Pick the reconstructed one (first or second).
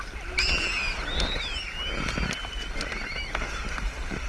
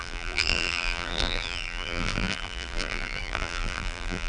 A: second